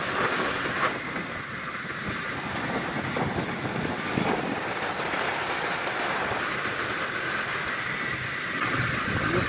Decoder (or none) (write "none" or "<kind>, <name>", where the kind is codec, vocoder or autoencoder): none